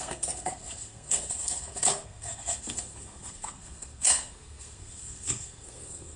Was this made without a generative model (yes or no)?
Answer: no